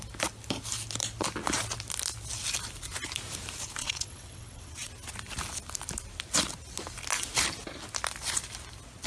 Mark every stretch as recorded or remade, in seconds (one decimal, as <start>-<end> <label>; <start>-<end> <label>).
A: 0.0-3.8 recorded; 3.8-4.9 remade; 4.9-9.1 recorded